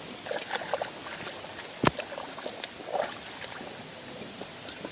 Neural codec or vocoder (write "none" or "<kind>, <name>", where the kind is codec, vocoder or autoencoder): none